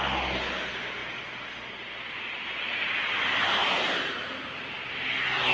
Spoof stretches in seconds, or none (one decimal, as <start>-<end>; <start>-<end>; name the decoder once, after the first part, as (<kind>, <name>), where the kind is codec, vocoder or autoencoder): none